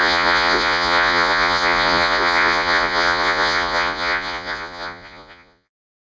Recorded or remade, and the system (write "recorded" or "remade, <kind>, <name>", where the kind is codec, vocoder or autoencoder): remade, vocoder, Vocos